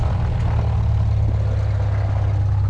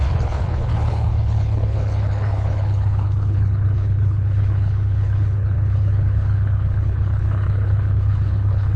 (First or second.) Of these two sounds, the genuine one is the first